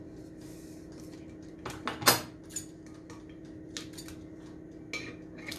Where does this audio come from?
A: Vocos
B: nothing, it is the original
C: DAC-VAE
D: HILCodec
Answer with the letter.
B